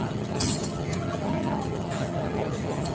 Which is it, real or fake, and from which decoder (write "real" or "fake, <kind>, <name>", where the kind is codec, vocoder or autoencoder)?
fake, vocoder, HiFi-GAN